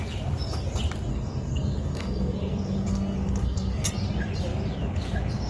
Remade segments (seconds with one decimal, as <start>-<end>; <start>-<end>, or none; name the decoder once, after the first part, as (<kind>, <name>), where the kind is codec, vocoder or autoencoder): 1.1-3.9 (codec, SNAC)